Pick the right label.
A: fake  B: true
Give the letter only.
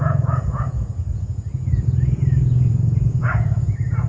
A